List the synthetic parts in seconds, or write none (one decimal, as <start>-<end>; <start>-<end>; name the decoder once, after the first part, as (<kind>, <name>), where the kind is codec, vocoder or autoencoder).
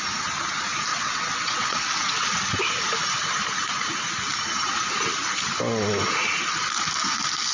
0.9-2.6 (vocoder, WaveNeXt)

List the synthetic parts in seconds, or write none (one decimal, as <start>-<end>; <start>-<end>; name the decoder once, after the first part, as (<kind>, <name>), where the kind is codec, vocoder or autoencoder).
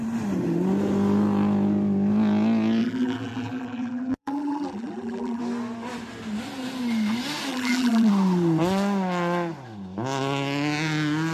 2.8-5.4 (vocoder, BigVGAN v2); 7.5-8.1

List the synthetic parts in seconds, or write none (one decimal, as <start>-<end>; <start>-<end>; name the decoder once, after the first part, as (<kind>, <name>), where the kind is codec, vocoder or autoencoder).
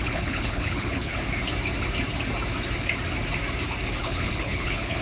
0.0-1.1 (codec, HILCodec); 4.0-5.0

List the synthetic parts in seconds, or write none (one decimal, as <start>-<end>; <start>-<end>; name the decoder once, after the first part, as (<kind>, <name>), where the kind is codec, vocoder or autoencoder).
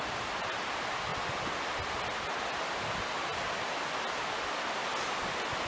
none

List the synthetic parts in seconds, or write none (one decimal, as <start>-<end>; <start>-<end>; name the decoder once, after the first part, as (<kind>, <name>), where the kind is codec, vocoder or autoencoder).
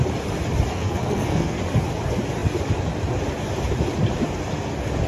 0.7-1.6 (codec, SNAC)